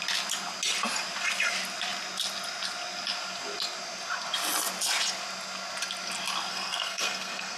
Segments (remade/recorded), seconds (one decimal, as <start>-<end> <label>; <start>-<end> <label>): 0.0-6.5 recorded; 6.5-7.6 remade